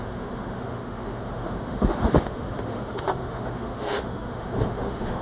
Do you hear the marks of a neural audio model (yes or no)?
yes